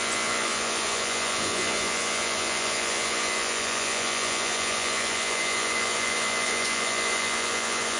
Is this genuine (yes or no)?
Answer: no